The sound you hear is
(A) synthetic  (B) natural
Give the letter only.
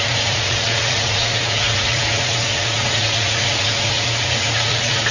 A